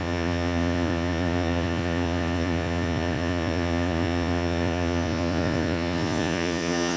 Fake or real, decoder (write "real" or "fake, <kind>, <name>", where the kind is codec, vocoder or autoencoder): fake, vocoder, Vocos